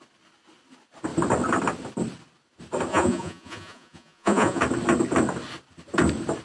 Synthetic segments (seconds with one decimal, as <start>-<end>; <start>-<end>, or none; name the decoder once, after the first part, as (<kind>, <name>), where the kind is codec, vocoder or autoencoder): 2.9-4.6 (vocoder, Vocos)

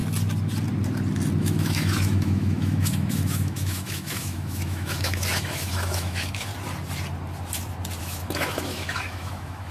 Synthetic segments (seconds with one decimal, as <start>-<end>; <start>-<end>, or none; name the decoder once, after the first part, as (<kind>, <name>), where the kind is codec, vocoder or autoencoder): 1.4-6.5 (autoencoder, DAC-VAE); 8.0-9.7

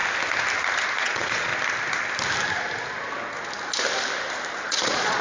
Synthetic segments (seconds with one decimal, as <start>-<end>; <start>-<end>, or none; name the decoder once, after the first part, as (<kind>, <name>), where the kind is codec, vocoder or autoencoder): 1.0-1.5 (vocoder, Vocos); 4.6-5.2